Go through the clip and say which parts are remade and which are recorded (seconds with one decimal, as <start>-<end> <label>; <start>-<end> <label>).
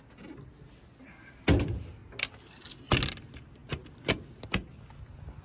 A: 0.0-5.4 recorded